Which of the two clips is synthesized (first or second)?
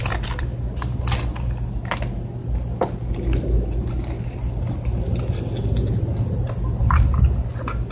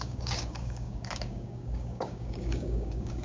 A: second